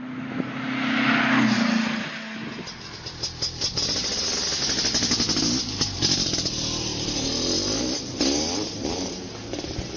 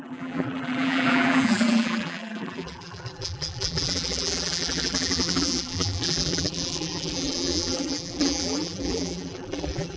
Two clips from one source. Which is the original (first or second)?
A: first